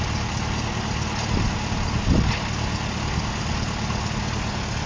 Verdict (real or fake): real